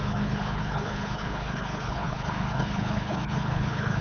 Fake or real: fake